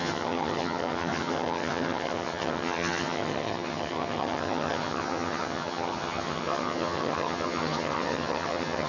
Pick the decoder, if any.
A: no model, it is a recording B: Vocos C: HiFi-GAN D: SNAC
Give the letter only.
C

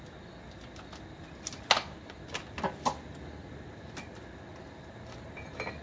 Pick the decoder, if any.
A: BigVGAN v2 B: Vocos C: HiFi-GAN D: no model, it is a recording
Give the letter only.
D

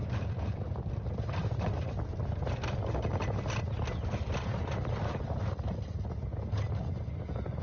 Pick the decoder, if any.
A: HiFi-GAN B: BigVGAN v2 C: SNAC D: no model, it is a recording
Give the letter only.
D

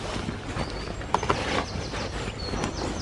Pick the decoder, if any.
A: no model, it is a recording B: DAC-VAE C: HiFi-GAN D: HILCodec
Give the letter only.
A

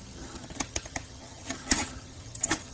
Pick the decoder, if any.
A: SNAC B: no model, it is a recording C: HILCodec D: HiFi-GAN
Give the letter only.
D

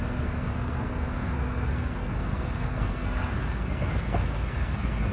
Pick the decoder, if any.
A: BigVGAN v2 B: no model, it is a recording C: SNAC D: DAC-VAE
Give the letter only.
C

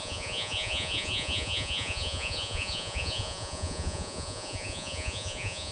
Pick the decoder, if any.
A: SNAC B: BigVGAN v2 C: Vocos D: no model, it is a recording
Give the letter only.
C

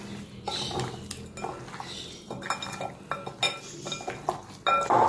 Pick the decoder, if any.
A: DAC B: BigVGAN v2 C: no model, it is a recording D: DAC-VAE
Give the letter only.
C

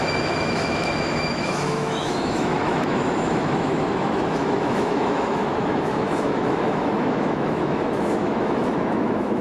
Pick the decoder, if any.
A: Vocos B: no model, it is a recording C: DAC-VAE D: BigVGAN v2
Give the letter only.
C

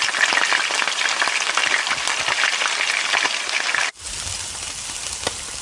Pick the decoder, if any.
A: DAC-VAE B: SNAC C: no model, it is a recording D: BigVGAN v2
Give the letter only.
C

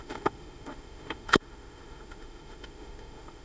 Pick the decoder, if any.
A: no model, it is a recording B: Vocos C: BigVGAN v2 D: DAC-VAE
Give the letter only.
D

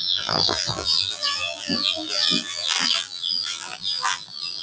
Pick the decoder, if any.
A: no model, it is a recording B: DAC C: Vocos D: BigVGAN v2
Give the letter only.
D